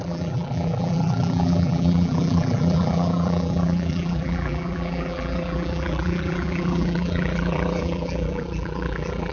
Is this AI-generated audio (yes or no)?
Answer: yes